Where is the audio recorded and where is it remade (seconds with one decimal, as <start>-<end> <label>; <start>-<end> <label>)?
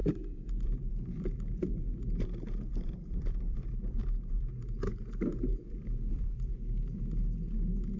0.0-1.7 remade; 1.7-2.7 recorded; 2.7-4.8 remade; 4.8-5.5 recorded; 5.5-6.5 remade; 6.5-8.0 recorded